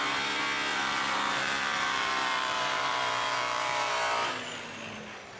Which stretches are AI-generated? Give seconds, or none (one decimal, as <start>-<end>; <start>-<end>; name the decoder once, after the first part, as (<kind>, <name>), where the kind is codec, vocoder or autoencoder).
0.7-3.9 (vocoder, BigVGAN v2)